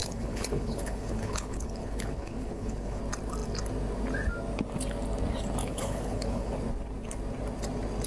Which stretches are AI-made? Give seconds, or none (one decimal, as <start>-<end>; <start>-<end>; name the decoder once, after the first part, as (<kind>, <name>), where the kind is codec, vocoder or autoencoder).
0.0-3.0 (codec, HILCodec); 5.6-6.5